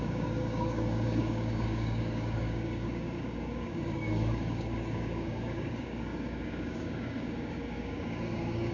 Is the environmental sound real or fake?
fake